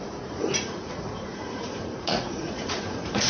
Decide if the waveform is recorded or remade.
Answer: remade